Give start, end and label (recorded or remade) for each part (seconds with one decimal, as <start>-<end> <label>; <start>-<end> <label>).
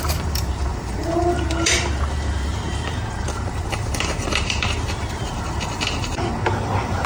0.0-6.3 remade; 6.3-7.1 recorded